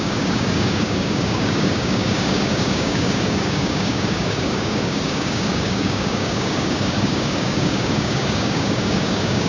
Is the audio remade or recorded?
remade